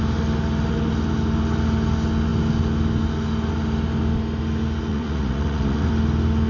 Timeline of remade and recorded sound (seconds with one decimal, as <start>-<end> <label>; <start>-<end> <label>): 0.0-4.9 recorded; 4.9-5.9 remade; 5.9-6.5 recorded